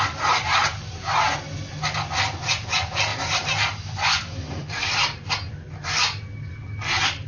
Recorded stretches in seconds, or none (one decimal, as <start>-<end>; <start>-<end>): 0.0-0.6; 1.4-3.1; 5.3-7.3